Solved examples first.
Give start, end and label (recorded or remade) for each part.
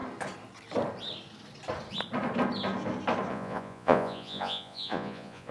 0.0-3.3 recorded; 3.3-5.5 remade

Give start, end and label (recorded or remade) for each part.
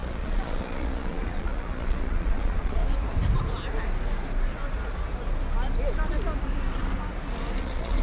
0.0-2.8 remade; 2.8-7.6 recorded; 7.6-8.0 remade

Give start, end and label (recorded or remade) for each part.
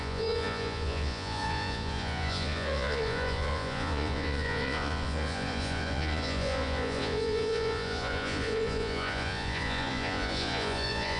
0.0-11.2 remade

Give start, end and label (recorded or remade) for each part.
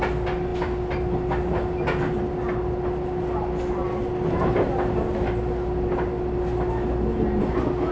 0.0-7.9 recorded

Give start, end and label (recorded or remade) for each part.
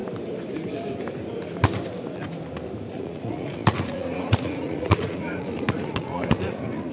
0.0-2.9 recorded; 2.9-6.9 remade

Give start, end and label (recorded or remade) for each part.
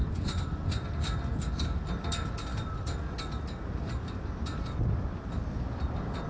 0.0-0.9 remade; 0.9-6.3 recorded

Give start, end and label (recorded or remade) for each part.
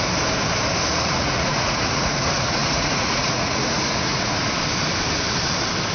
0.0-0.9 recorded; 0.9-4.4 remade; 4.4-5.9 recorded